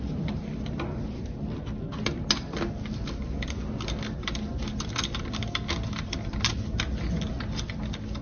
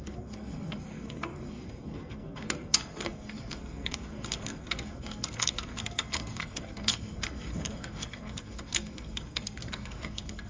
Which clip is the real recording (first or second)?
first